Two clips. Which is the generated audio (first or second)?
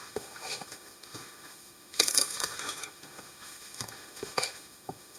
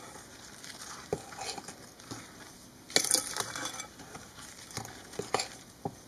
first